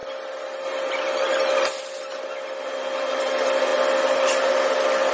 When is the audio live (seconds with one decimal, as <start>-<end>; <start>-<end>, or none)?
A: 0.0-5.1